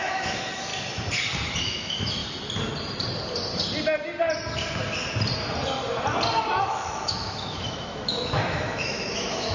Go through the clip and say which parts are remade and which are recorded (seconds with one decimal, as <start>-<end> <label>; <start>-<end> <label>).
0.0-0.7 remade; 0.7-1.6 recorded; 1.6-2.2 remade; 2.2-6.6 recorded; 6.6-9.5 remade